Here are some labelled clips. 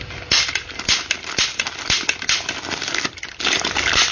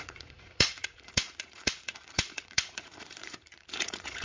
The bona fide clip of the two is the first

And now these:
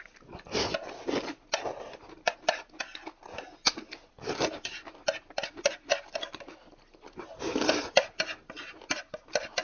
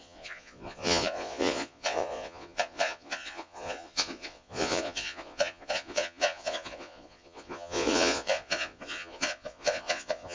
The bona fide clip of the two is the first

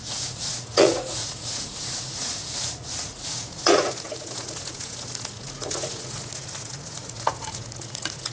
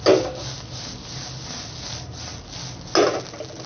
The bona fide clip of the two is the second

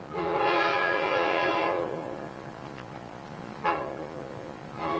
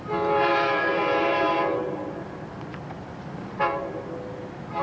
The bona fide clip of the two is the second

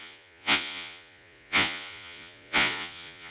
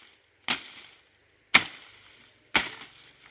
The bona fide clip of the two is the second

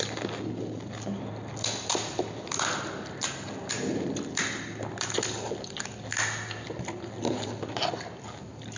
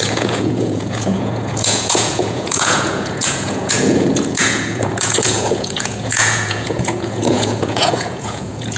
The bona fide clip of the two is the first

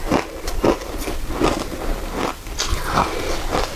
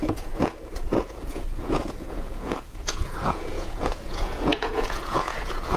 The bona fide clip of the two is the first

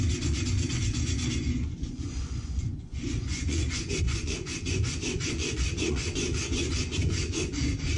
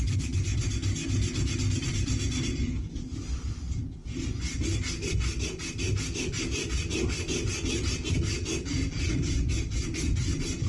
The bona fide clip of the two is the second